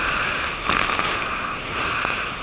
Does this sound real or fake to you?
real